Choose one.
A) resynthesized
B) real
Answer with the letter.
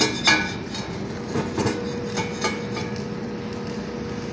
B